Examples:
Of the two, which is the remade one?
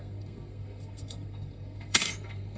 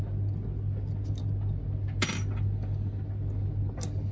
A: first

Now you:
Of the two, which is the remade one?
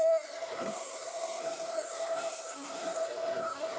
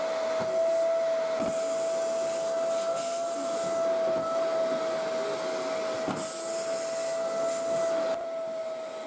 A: first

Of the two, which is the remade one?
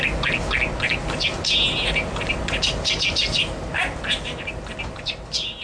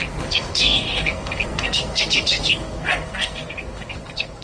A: second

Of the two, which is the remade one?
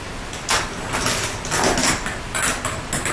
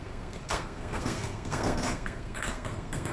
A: second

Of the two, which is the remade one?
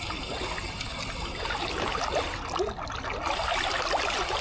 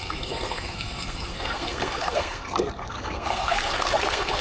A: second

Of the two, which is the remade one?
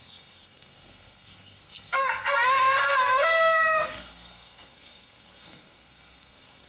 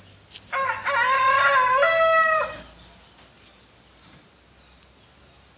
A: first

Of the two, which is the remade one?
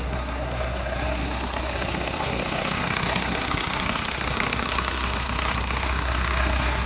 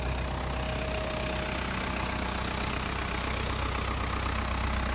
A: first